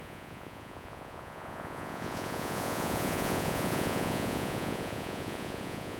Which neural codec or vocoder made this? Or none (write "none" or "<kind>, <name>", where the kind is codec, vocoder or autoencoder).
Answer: vocoder, Vocos